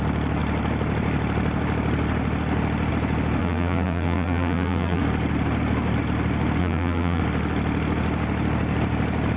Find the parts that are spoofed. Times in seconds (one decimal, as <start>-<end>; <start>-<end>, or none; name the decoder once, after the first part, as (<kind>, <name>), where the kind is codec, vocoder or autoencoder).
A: 3.4-5.0 (vocoder, BigVGAN v2); 6.6-7.2